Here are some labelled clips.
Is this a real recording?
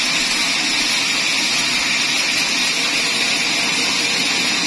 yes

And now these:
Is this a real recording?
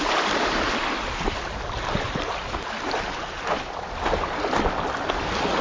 yes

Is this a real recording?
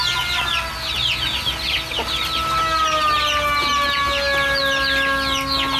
yes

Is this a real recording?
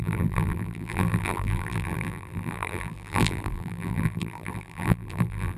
no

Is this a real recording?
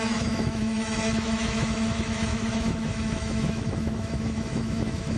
no